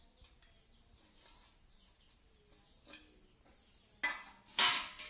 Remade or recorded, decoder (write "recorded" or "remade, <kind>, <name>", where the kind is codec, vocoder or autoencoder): recorded